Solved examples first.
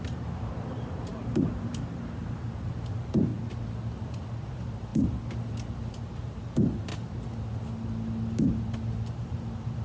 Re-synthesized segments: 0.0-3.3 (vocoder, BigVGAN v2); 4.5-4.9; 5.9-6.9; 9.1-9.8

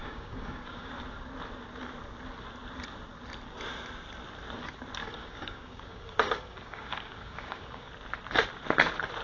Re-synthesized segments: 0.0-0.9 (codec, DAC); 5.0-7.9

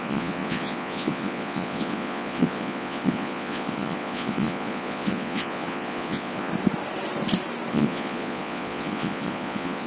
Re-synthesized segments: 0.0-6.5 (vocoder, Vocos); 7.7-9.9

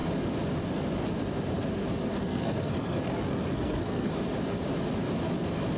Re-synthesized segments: 2.2-4.1 (codec, SNAC)